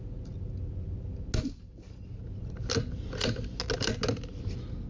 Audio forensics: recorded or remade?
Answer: recorded